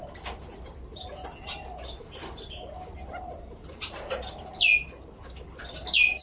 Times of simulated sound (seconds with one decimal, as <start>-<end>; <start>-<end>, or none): none